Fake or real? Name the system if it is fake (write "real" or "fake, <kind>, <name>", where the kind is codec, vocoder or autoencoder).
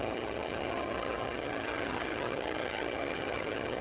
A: fake, vocoder, HiFi-GAN